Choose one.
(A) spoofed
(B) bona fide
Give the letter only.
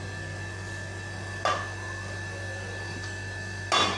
B